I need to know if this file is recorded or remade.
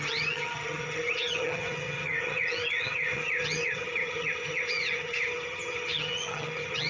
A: remade